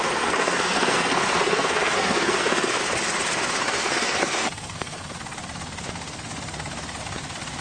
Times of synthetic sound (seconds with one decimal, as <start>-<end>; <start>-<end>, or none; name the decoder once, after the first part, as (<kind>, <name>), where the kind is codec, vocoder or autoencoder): 0.0-2.8 (codec, SNAC); 3.6-5.1